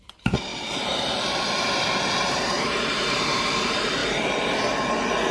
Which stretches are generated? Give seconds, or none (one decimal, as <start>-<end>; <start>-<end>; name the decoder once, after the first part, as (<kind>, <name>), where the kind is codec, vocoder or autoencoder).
0.0-0.5 (vocoder, BigVGAN v2); 2.2-4.0